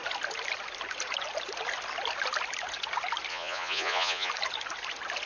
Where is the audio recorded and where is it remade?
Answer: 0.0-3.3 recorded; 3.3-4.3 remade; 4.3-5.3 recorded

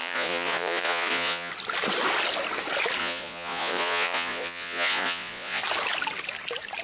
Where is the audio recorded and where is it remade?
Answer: 0.0-1.5 remade; 1.5-3.0 recorded; 3.0-5.6 remade; 5.6-6.8 recorded

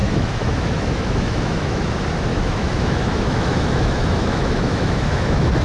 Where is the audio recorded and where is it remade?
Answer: 0.0-1.8 remade; 1.8-2.3 recorded; 2.3-5.6 remade